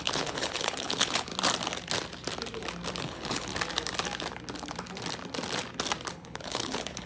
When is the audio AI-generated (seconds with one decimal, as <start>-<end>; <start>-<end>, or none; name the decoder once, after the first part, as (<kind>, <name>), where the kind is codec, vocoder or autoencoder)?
0.0-1.3 (codec, HILCodec); 3.0-3.5; 6.1-7.1